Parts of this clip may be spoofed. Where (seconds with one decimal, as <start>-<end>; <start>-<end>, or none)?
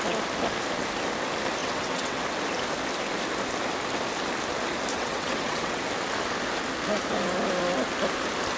1.6-2.2; 4.9-5.8